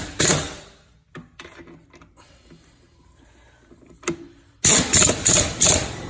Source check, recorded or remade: recorded